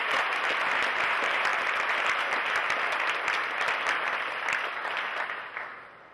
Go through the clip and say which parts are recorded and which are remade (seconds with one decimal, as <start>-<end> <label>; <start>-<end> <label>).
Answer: 0.0-6.1 recorded